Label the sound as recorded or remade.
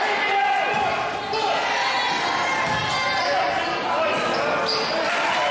recorded